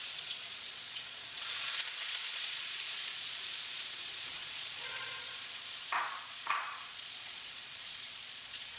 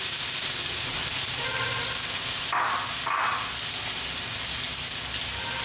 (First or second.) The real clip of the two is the second